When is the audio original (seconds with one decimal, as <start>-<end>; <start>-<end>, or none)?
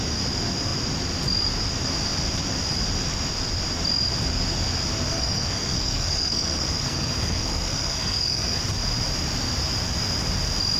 0.0-5.1; 8.6-10.8